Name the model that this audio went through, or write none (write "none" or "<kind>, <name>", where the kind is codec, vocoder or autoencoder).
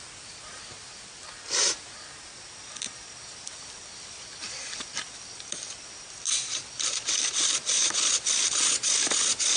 none